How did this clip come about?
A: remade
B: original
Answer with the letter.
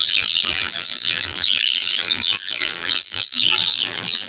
A